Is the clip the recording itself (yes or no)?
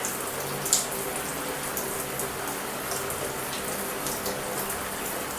yes